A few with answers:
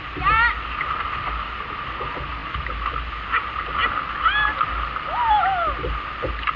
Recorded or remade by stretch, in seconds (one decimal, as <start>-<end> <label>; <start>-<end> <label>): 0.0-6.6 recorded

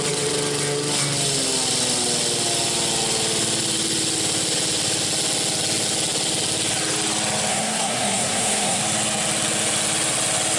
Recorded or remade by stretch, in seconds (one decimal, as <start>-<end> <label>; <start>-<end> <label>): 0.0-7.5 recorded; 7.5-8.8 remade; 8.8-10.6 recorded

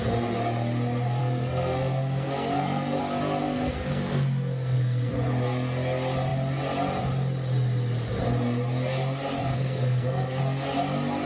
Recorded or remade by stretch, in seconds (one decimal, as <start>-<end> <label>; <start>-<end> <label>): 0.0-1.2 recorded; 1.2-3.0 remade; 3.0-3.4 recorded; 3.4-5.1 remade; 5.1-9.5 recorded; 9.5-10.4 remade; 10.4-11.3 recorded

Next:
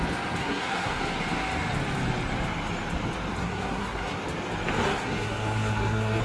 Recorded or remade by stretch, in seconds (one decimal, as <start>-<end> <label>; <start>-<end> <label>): 0.0-0.4 recorded; 0.4-1.0 remade; 1.0-3.4 recorded; 3.4-4.2 remade; 4.2-4.8 recorded; 4.8-6.2 remade

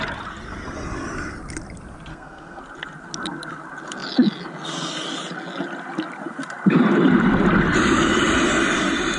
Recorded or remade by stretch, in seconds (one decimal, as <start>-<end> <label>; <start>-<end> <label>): 0.0-2.1 recorded; 2.1-2.6 remade; 2.6-9.2 recorded